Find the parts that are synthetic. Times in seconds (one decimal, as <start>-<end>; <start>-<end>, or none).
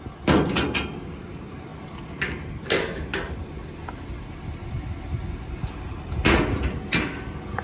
none